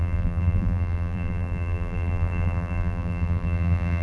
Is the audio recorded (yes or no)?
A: no